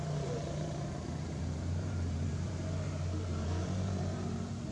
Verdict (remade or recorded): remade